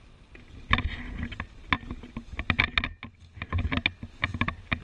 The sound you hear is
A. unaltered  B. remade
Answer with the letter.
A